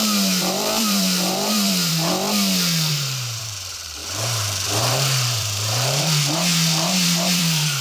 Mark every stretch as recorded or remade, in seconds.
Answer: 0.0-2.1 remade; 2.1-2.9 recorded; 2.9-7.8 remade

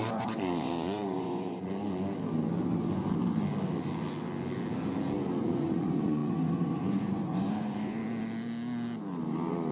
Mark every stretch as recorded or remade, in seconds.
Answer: 0.0-1.8 remade; 1.8-5.4 recorded; 5.4-8.0 remade; 8.0-9.7 recorded

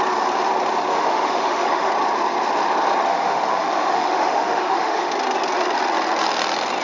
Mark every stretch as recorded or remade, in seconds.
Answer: 0.0-0.9 recorded; 0.9-1.9 remade; 1.9-3.1 recorded; 3.1-5.1 remade; 5.1-6.8 recorded

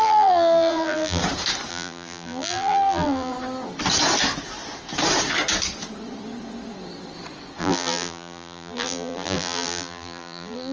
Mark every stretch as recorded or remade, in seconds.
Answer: 0.0-1.2 remade; 1.2-1.7 recorded; 1.7-3.3 remade; 3.3-7.6 recorded; 7.6-10.7 remade